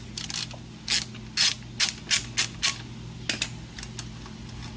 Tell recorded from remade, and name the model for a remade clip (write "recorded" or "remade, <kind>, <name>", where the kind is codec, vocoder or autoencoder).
recorded